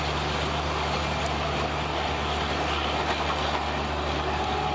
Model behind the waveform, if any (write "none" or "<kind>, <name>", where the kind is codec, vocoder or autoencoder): none